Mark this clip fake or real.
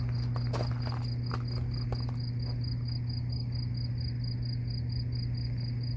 real